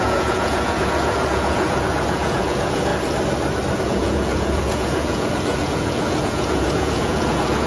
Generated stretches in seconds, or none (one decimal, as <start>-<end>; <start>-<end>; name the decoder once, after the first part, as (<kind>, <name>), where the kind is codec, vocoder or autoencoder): 0.0-2.9 (vocoder, Vocos); 3.8-7.7